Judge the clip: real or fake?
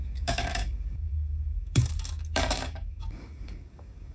fake